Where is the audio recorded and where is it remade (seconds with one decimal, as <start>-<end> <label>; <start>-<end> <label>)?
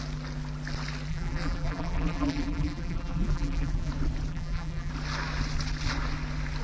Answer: 0.0-1.1 recorded; 1.1-3.9 remade; 3.9-4.3 recorded; 4.3-4.9 remade; 4.9-6.6 recorded